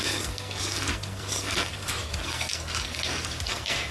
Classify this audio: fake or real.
fake